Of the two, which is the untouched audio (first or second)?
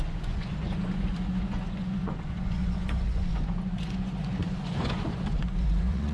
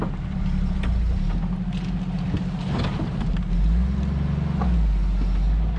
second